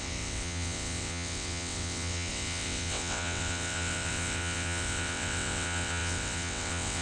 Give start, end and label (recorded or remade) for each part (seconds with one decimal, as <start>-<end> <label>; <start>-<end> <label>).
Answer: 0.0-7.0 remade